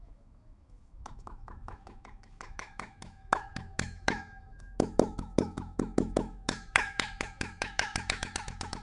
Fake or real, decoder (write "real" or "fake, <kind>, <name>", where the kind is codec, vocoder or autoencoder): fake, autoencoder, DAC-VAE